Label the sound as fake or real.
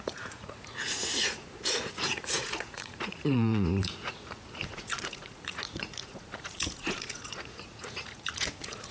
fake